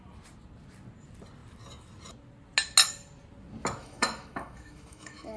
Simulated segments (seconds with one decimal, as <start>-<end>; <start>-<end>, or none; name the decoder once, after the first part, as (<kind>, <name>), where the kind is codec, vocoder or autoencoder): 3.8-5.4 (autoencoder, DAC-VAE)